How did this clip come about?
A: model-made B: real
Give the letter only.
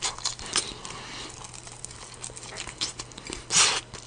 B